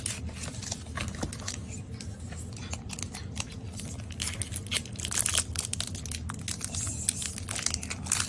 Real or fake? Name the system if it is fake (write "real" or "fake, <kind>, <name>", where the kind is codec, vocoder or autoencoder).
real